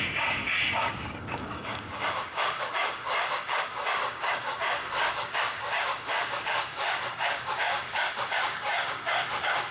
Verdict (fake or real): fake